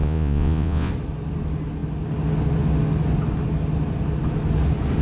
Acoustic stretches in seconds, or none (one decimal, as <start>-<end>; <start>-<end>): 0.9-5.0